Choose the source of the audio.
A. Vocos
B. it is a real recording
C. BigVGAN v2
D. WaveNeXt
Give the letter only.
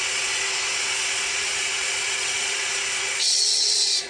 A